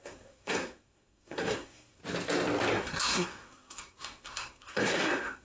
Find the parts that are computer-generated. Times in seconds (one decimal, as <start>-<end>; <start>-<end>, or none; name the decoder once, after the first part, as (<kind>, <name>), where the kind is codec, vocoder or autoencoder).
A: 0.0-2.0 (codec, SNAC); 2.7-5.4